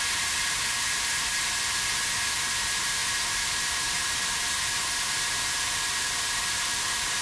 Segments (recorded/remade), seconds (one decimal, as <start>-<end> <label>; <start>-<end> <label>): 0.0-7.2 recorded